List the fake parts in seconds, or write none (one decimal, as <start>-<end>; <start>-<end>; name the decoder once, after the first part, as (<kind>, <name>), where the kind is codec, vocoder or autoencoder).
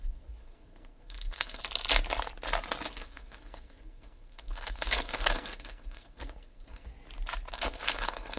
0.0-1.6 (codec, SNAC); 2.9-6.9; 7.5-8.4